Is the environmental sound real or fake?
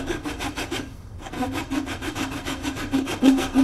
fake